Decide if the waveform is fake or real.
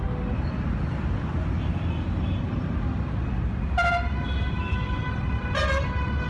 real